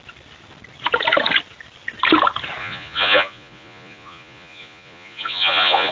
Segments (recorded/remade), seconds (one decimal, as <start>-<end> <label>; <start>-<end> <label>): 0.0-2.6 recorded; 2.6-5.9 remade